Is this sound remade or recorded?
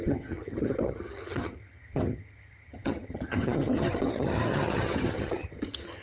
remade